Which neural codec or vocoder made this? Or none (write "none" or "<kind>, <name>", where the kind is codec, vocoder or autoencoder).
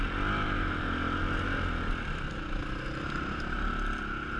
none